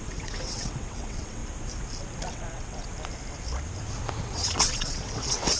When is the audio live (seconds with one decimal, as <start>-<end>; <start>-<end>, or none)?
1.4-2.3; 2.9-4.2

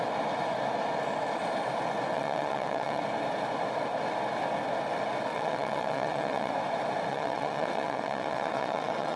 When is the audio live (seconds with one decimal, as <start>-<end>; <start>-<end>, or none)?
0.0-2.1; 3.0-5.3; 6.5-7.1

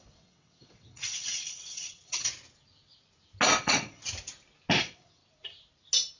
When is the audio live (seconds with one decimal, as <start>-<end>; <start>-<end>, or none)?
2.3-3.6; 4.0-4.8; 5.2-6.2

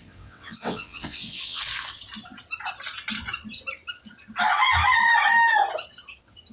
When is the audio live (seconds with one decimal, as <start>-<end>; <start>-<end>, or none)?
1.6-6.5

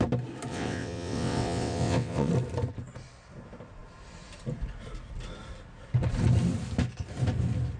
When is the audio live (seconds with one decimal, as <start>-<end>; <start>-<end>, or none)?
0.0-0.5; 2.3-7.8

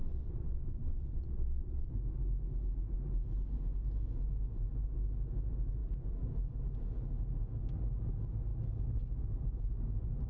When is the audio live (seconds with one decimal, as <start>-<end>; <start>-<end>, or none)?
1.9-10.3

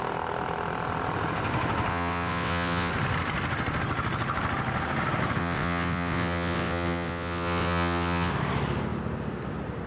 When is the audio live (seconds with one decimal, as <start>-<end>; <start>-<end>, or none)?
0.0-1.9; 2.9-5.4; 8.3-9.9

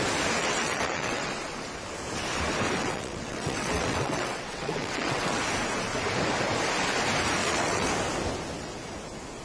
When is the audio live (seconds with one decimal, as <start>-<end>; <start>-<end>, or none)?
0.0-0.4; 1.3-2.8; 5.4-7.4; 7.9-9.4